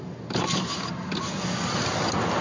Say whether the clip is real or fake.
real